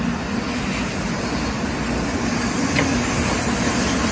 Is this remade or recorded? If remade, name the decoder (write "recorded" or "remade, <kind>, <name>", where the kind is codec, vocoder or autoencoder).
recorded